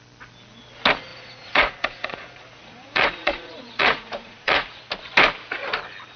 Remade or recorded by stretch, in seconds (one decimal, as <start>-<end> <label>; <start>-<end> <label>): 0.0-1.1 recorded; 1.1-4.8 remade; 4.8-6.2 recorded